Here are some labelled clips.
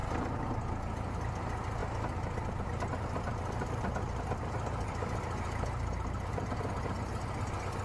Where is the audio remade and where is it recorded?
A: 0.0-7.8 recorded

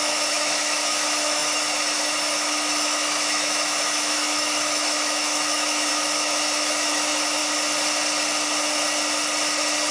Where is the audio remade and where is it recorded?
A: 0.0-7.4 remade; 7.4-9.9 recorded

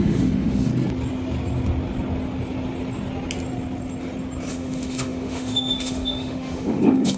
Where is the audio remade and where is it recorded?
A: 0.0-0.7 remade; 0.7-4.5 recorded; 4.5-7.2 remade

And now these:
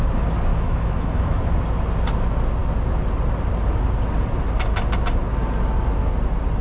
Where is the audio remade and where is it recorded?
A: 0.0-0.5 recorded; 0.5-1.4 remade; 1.4-6.6 recorded

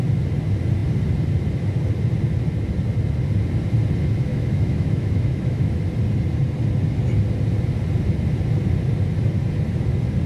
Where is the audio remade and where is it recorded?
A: 0.0-4.3 recorded; 4.3-5.8 remade; 5.8-10.3 recorded